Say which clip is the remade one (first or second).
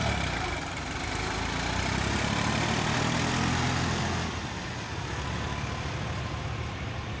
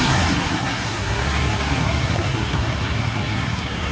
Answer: second